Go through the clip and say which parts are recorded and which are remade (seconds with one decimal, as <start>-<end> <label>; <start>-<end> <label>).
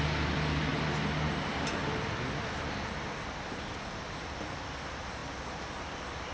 0.0-6.3 recorded